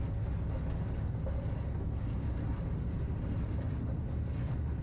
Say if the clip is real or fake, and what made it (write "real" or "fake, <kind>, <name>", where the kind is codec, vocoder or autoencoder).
real